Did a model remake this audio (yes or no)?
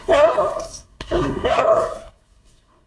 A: yes